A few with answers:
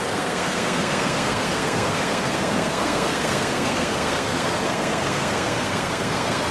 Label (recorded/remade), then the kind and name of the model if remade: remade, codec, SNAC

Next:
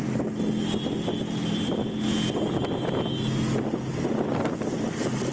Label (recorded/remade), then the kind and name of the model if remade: recorded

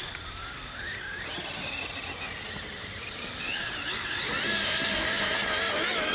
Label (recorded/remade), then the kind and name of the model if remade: recorded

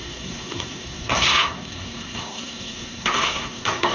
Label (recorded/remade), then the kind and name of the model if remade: remade, codec, SNAC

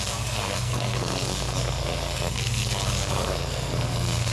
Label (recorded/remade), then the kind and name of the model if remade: remade, codec, SNAC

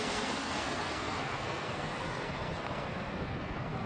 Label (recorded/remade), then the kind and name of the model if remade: remade, codec, SNAC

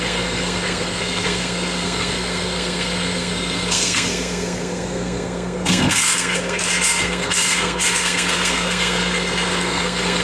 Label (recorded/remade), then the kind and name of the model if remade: remade, codec, SNAC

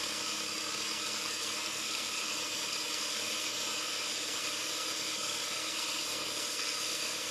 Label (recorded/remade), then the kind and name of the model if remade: remade, codec, SNAC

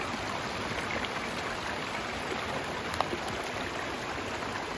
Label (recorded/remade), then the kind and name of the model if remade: recorded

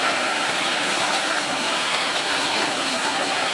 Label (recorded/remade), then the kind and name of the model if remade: remade, codec, SNAC